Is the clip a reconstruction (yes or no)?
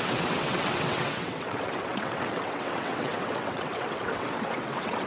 yes